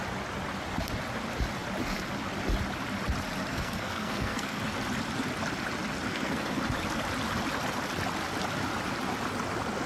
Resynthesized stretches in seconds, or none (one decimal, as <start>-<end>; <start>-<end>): 3.5-4.6; 6.1-6.6